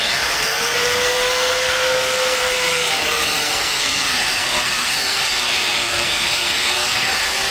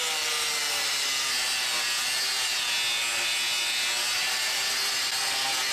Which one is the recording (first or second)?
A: second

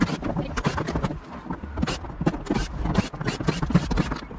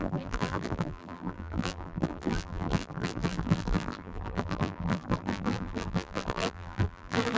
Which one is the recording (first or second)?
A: first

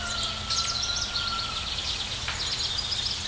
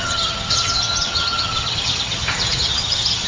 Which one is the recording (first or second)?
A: first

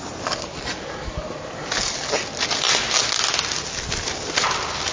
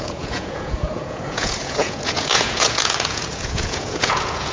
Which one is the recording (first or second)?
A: first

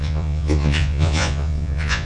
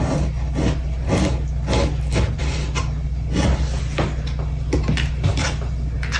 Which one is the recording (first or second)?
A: second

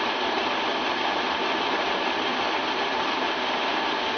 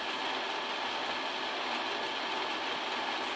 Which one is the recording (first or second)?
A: second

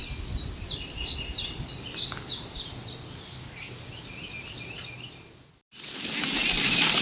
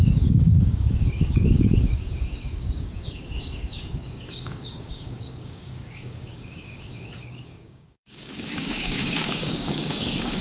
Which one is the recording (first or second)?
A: first